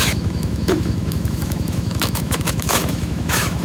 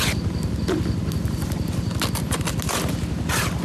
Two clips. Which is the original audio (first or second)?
second